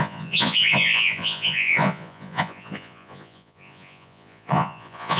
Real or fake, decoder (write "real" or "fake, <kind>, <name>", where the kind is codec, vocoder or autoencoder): fake, vocoder, Vocos